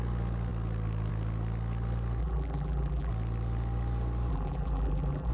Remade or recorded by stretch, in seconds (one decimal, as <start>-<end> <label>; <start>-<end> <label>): 0.0-2.2 recorded; 2.2-3.1 remade; 3.1-4.3 recorded; 4.3-5.3 remade